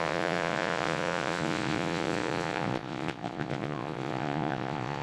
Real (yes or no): no